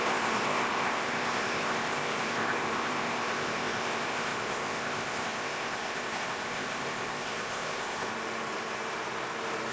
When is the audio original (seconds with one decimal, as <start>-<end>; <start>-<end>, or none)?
8.1-9.7